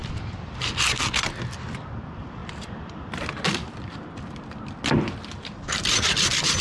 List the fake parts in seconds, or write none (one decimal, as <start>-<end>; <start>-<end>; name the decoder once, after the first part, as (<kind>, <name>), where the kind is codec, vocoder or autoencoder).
0.0-0.7 (vocoder, BigVGAN v2)

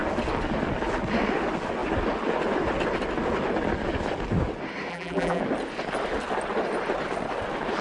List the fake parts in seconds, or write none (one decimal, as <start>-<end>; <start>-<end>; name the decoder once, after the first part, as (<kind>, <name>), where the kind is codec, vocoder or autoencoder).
4.9-5.4 (vocoder, BigVGAN v2)

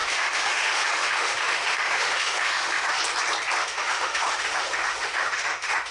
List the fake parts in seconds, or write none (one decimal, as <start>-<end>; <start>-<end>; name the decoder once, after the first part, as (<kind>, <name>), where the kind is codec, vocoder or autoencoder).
0.0-3.0 (autoencoder, DAC-VAE); 3.6-5.9

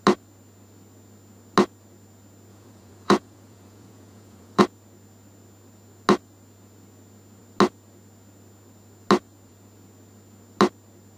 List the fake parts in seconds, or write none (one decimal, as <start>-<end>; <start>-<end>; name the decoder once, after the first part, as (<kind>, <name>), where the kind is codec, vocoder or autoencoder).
2.5-4.6 (vocoder, Vocos)